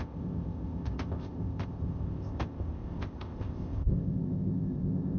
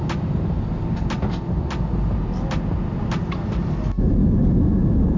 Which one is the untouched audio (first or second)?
second